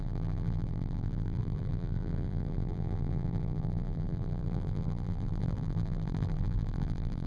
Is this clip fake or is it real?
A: fake